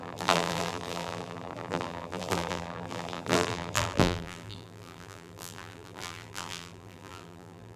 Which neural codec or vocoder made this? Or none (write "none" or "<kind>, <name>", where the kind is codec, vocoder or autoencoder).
vocoder, BigVGAN v2